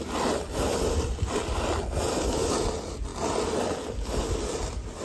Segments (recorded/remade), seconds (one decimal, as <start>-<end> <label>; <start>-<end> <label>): 0.0-5.0 recorded